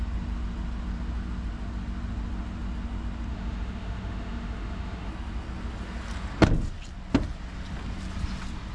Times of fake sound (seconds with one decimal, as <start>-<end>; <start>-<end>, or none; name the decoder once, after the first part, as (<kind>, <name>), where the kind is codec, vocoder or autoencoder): 3.3-5.1 (autoencoder, DAC-VAE)